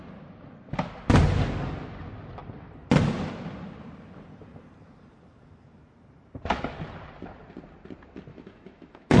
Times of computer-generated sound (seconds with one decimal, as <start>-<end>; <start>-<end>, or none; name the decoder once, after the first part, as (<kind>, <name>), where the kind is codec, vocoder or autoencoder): 8.3-9.2 (autoencoder, DAC-VAE)